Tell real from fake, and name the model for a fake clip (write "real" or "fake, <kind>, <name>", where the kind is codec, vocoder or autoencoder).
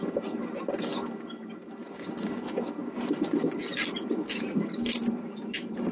real